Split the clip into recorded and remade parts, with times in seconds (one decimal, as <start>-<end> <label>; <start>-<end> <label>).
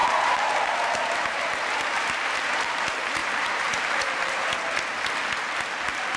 0.0-2.8 remade; 2.8-3.2 recorded; 3.2-4.5 remade; 4.5-6.2 recorded